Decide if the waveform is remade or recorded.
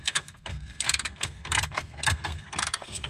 remade